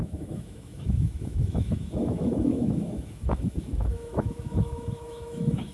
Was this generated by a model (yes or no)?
yes